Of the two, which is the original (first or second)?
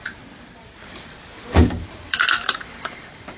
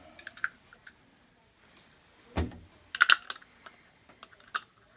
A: second